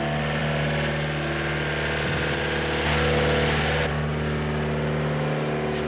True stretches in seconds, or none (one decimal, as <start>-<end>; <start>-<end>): 0.0-5.9